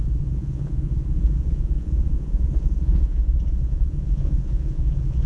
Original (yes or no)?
no